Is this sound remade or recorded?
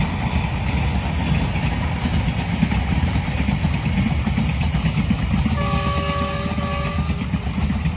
recorded